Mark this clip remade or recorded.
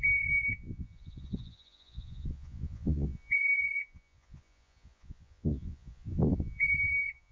remade